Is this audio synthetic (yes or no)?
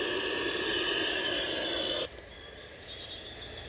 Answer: no